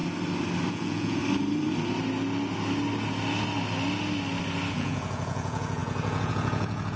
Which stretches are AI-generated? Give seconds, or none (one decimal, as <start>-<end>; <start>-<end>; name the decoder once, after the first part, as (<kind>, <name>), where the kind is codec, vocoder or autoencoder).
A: 0.7-1.2 (vocoder, Vocos); 4.7-7.0

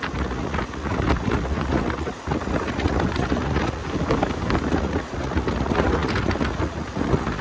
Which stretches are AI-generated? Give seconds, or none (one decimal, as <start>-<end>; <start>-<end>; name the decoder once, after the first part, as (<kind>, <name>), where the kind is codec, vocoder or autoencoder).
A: 0.0-3.8 (vocoder, Vocos); 4.7-7.4